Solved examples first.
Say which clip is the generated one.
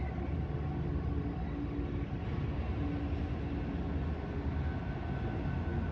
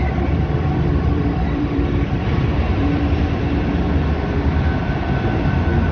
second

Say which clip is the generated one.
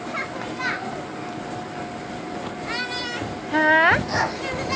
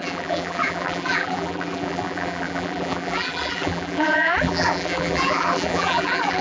second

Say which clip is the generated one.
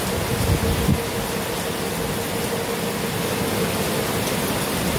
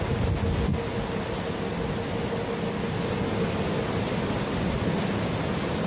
first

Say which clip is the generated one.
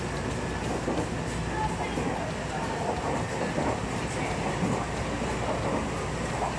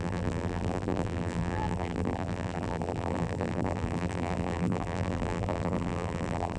second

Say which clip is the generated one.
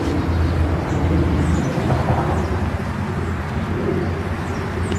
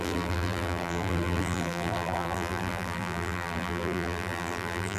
second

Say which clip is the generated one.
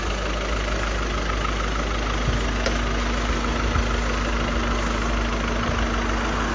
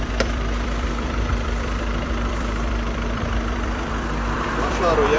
second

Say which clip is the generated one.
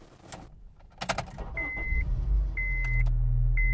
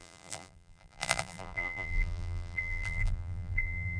second